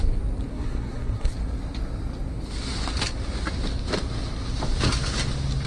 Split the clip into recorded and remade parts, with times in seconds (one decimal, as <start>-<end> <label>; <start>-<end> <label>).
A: 0.0-0.5 recorded; 0.5-1.3 remade; 1.3-5.7 recorded